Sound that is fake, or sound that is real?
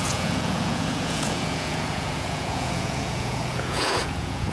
fake